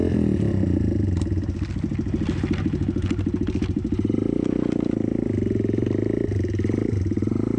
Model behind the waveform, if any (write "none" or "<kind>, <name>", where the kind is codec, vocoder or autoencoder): none